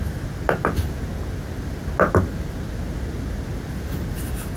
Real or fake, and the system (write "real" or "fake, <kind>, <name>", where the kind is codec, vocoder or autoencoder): real